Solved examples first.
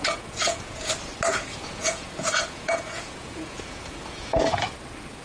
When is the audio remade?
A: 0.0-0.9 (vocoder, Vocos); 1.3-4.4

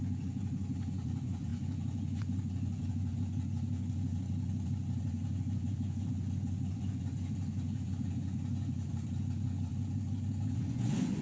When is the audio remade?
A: 0.0-9.7 (vocoder, Vocos); 10.5-11.2

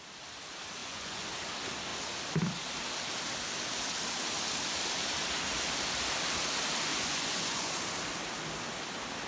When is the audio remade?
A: 0.8-1.3 (vocoder, Vocos); 6.9-7.7

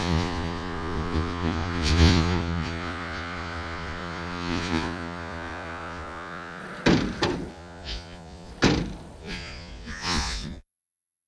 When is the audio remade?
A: 0.0-6.6 (vocoder, Vocos); 7.5-8.5; 9.2-11.3

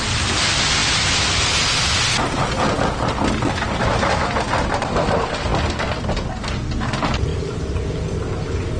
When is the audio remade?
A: none